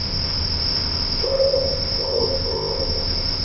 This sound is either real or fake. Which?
fake